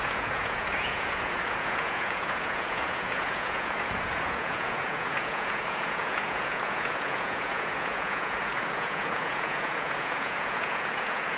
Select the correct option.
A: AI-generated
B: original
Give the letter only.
A